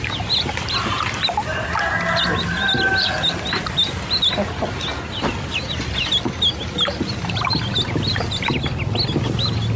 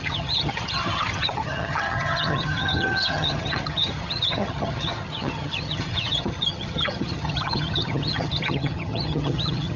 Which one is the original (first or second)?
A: first